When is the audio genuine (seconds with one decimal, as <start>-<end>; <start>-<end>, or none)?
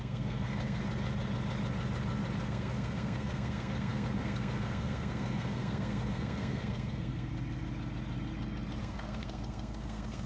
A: 0.8-2.4; 7.3-8.8